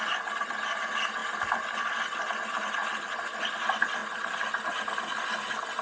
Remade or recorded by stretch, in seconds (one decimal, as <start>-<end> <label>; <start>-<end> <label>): 0.0-5.8 recorded